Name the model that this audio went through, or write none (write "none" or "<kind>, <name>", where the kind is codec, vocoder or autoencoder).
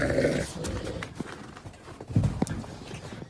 none